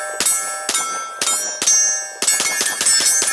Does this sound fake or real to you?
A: real